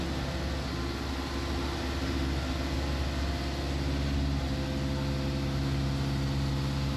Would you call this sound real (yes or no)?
yes